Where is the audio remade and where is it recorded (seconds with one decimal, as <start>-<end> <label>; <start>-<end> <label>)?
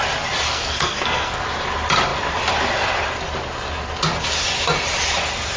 0.0-0.5 recorded; 0.5-1.4 remade; 1.4-5.6 recorded